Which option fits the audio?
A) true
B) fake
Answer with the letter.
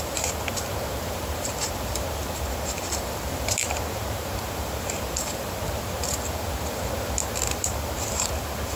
B